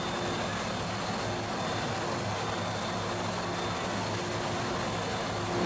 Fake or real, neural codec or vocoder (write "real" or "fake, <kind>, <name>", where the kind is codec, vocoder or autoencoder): real